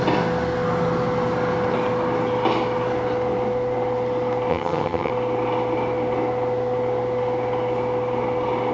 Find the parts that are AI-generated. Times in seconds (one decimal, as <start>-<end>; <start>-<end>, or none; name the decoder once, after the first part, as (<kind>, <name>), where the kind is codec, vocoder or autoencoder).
4.5-5.1 (vocoder, HiFi-GAN)